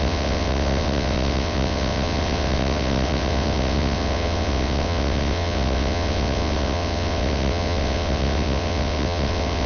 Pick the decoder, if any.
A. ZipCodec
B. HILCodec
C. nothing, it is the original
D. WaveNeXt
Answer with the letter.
D